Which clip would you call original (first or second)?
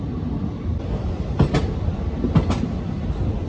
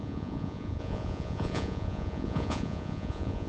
first